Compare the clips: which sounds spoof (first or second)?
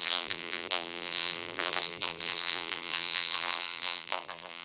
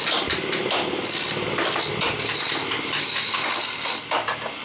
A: first